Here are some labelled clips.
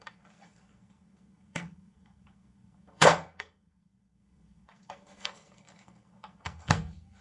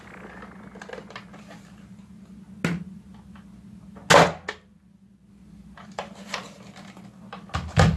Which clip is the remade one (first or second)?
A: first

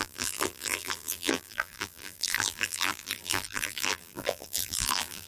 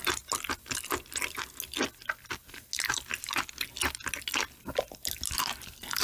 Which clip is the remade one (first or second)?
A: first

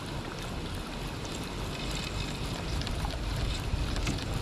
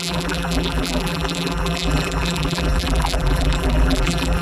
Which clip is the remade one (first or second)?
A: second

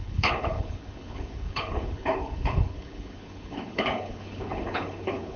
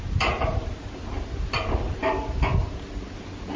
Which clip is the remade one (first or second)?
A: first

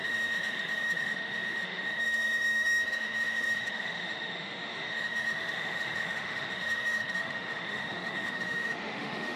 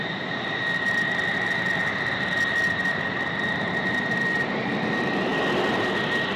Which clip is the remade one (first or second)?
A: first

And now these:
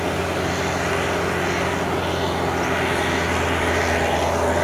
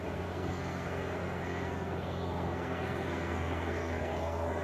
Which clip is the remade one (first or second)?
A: second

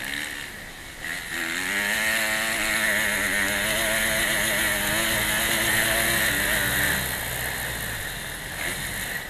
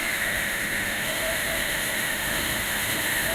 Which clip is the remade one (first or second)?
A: second